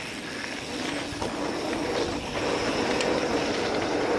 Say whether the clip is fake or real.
real